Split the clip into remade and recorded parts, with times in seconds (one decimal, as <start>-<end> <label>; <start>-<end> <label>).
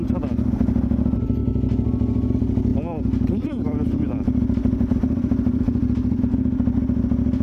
0.0-2.7 recorded; 2.7-6.2 remade; 6.2-7.4 recorded